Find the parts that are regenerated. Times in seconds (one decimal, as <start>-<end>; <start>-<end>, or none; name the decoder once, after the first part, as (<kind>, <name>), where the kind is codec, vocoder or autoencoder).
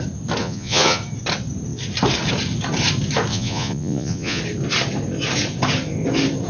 0.4-1.0 (vocoder, Vocos); 3.3-4.4